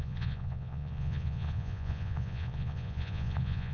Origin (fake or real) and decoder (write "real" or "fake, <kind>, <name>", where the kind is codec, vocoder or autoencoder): fake, vocoder, Vocos